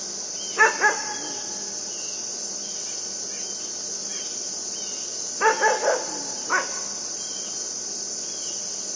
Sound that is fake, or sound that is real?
real